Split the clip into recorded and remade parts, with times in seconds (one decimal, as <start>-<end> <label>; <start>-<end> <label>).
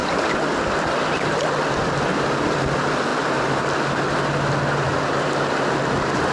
0.0-6.3 recorded